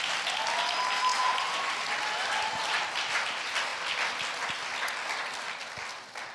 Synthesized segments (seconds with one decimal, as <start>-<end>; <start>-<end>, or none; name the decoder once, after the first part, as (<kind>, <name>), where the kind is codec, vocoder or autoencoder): 1.1-1.7 (vocoder, Vocos)